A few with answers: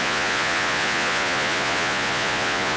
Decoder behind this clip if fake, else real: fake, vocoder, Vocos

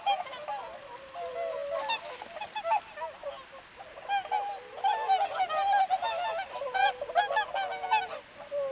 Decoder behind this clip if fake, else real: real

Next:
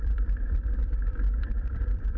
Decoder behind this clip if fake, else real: fake, vocoder, BigVGAN v2